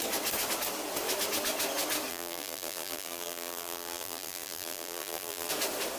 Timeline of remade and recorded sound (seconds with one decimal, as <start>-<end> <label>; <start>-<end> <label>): 0.0-2.1 recorded; 2.1-5.5 remade; 5.5-6.0 recorded